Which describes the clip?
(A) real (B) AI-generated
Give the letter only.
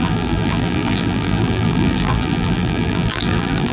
B